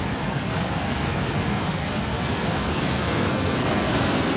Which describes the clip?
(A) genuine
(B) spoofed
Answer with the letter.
B